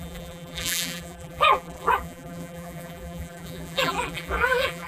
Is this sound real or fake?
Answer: fake